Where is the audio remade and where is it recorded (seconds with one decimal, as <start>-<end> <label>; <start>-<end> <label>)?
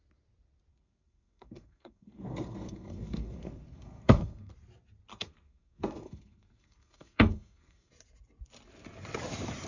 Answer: 0.0-0.7 recorded; 0.7-4.5 remade; 4.5-5.1 recorded; 5.1-7.9 remade; 7.9-9.7 recorded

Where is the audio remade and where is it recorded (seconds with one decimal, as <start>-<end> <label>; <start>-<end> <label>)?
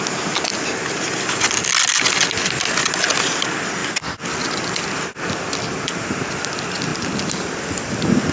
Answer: 0.0-8.3 recorded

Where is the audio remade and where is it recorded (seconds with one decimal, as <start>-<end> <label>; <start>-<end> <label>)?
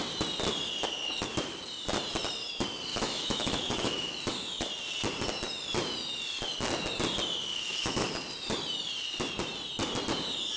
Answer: 0.0-2.9 recorded; 2.9-4.7 remade; 4.7-7.5 recorded; 7.5-8.1 remade; 8.1-10.6 recorded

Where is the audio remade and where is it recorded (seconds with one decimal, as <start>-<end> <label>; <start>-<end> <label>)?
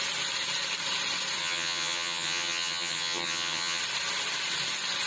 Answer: 0.0-1.4 recorded; 1.4-3.8 remade; 3.8-5.1 recorded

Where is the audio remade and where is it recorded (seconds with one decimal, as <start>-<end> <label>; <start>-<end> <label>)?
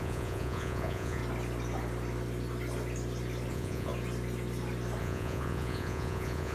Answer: 0.0-1.2 remade; 1.2-3.5 recorded; 3.5-3.9 remade; 3.9-5.0 recorded; 5.0-6.5 remade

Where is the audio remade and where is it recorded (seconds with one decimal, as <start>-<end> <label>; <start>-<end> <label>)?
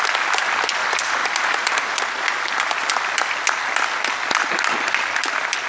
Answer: 0.0-1.2 recorded; 1.2-2.0 remade; 2.0-5.7 recorded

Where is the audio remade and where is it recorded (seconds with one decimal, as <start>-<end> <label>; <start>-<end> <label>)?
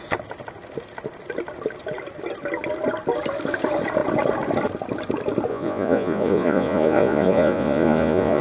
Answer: 0.0-5.5 recorded; 5.5-8.4 remade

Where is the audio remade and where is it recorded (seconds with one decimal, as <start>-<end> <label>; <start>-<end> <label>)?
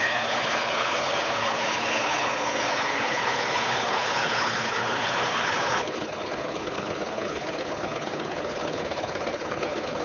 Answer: 0.0-10.0 remade